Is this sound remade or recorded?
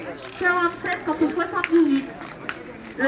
recorded